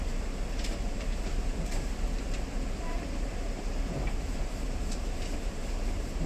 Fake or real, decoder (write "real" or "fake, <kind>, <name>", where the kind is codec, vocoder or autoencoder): fake, vocoder, BigVGAN v2